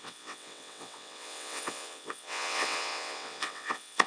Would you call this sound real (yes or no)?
no